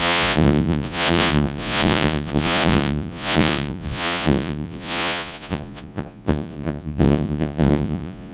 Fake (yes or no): yes